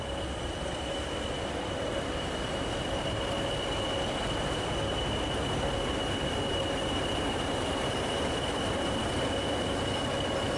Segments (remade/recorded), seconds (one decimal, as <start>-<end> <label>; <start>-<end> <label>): 0.0-6.5 recorded; 6.5-9.0 remade; 9.0-10.6 recorded